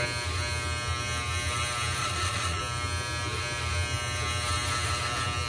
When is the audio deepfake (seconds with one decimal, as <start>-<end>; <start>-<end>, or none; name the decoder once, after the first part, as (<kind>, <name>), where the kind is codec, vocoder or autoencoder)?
2.0-2.6 (vocoder, Vocos)